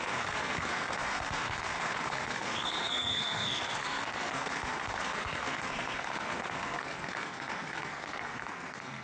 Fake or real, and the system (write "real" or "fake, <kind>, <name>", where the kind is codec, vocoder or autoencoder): fake, codec, SNAC